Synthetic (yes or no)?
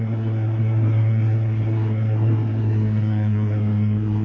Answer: yes